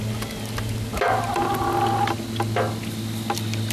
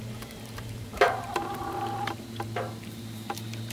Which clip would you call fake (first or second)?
second